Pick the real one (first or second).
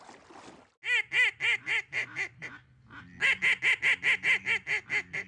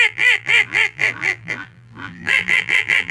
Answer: first